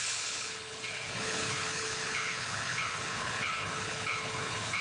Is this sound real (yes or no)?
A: no